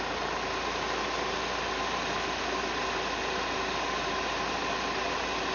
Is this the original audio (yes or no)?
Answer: yes